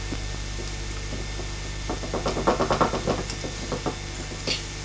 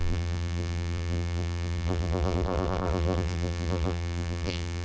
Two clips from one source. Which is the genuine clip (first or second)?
first